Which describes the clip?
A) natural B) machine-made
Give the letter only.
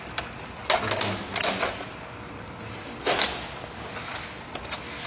A